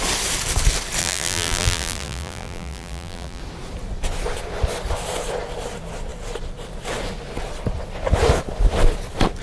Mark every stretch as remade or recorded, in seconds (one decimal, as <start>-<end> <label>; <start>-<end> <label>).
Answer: 0.0-1.0 recorded; 1.0-3.4 remade; 3.4-9.4 recorded